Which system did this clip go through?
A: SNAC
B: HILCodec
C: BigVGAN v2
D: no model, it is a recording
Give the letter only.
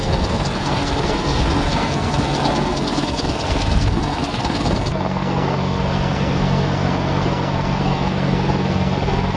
A